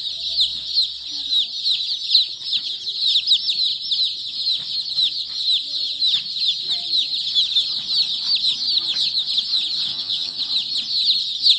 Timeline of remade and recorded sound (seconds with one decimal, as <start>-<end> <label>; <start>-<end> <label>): 0.0-9.9 recorded; 9.9-10.4 remade; 10.4-11.6 recorded